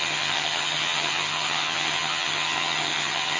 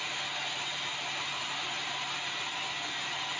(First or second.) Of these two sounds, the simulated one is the first